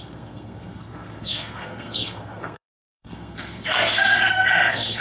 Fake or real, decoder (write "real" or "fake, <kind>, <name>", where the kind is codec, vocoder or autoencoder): fake, codec, SNAC